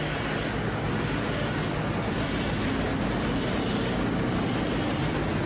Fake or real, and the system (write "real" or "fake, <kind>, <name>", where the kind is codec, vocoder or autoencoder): real